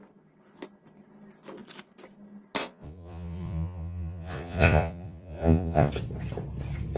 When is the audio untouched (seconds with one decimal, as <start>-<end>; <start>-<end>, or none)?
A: 0.0-2.6; 5.9-7.0